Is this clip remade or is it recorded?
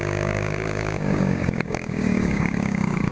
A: remade